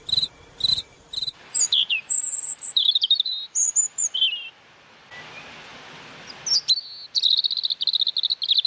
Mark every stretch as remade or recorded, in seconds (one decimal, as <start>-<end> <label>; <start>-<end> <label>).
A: 0.0-0.7 recorded; 0.7-4.2 remade; 4.2-8.7 recorded